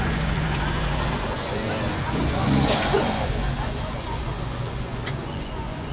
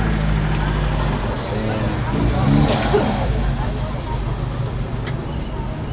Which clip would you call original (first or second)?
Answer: second